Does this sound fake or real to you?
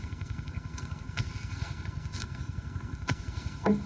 fake